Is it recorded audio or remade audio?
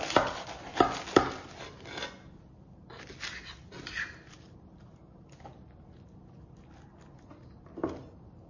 recorded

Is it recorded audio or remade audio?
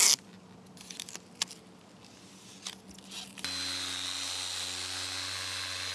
recorded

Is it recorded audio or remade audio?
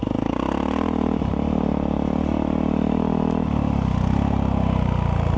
recorded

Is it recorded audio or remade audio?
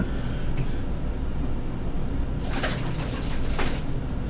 recorded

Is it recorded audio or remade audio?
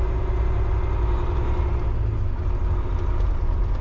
recorded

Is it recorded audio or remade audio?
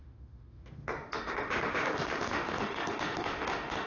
remade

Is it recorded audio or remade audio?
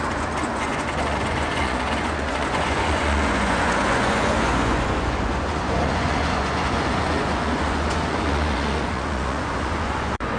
remade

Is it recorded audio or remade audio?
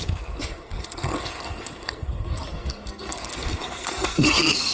remade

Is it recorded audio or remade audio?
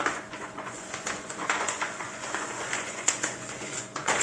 remade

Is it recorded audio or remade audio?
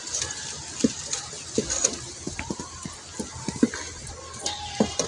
recorded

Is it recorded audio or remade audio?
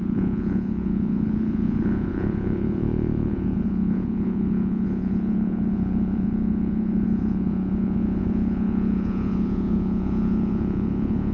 remade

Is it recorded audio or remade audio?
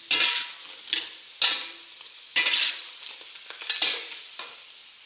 recorded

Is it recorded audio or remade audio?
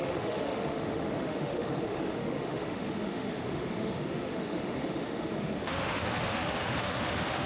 remade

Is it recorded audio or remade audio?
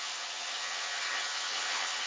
remade